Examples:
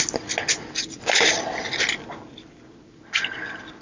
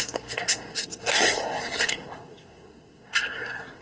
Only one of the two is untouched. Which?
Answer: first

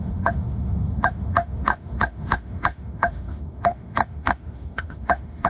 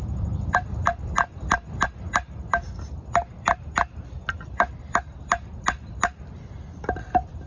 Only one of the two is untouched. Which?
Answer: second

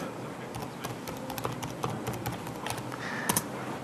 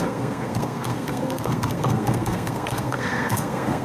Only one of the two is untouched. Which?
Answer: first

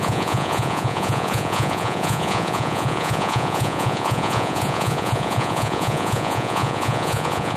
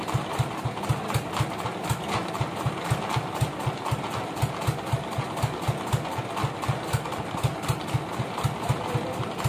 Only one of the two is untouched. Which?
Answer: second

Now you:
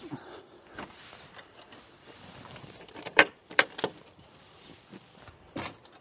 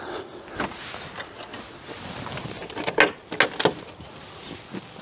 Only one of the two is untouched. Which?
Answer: second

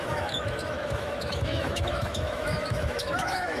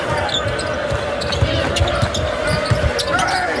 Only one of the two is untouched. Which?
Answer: second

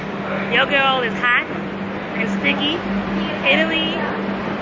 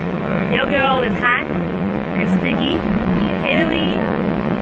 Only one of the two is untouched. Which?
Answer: first